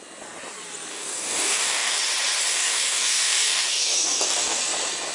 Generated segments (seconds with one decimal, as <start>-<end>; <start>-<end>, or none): 0.9-2.0; 2.5-4.6